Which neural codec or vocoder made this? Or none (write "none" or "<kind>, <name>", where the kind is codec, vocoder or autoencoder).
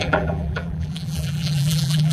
vocoder, BigVGAN v2